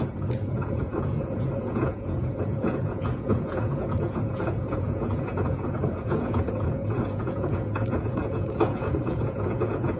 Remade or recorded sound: remade